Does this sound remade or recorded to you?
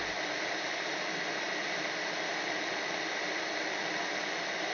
recorded